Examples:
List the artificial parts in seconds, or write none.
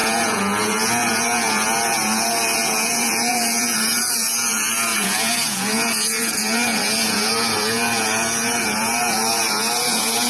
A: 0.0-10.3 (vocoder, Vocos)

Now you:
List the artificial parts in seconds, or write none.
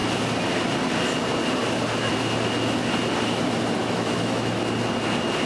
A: 3.8-4.6 (autoencoder, DAC-VAE)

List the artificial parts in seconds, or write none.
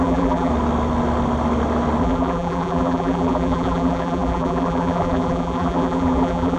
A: 0.0-0.5 (vocoder, BigVGAN v2); 2.0-6.6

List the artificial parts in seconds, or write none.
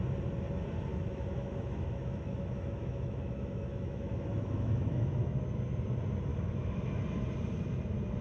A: 0.9-5.4 (autoencoder, DAC-VAE); 6.3-7.0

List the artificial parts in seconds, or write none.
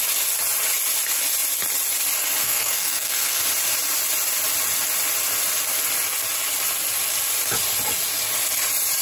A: 2.4-3.4 (codec, SNAC)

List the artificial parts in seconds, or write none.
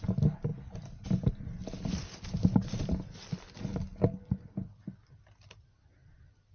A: none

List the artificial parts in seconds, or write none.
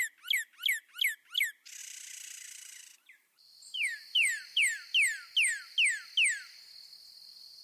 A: 1.8-4.6 (vocoder, BigVGAN v2)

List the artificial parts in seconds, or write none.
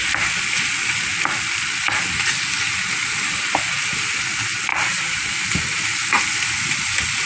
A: 2.8-3.3 (vocoder, BigVGAN v2); 4.7-5.3